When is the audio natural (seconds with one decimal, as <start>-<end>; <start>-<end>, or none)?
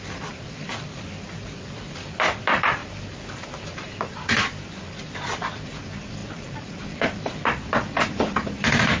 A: 0.0-2.8; 4.4-6.2; 7.4-9.0